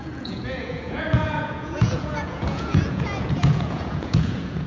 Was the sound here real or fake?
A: fake